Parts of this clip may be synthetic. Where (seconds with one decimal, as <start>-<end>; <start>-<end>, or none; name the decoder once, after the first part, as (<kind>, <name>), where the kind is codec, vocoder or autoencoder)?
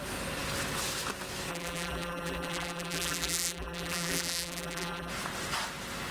1.5-5.1 (vocoder, BigVGAN v2)